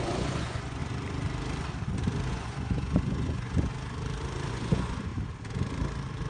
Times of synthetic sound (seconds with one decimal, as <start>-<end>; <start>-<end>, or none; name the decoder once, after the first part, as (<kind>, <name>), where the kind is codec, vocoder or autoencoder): 0.0-0.8 (vocoder, Vocos); 2.3-3.7; 4.5-5.1